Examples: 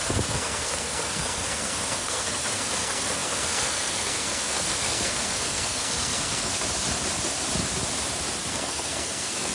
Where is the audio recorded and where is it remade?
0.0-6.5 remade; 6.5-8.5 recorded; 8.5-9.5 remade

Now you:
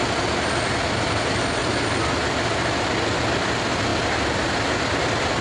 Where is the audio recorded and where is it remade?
0.0-5.4 recorded

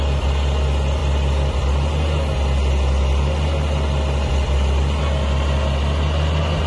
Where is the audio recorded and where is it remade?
0.0-6.7 recorded